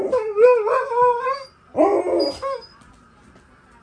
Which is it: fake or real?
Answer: real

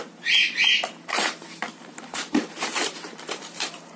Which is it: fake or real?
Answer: fake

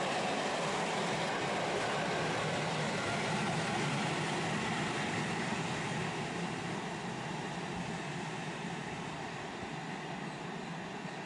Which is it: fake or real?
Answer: fake